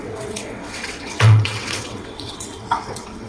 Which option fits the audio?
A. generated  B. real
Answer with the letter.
A